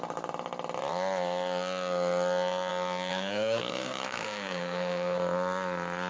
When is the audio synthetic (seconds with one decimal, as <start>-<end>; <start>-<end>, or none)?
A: 3.1-5.2